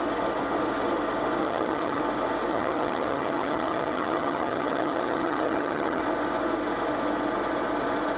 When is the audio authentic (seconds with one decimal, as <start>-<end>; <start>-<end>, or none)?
0.0-1.4; 2.0-2.5; 6.0-8.2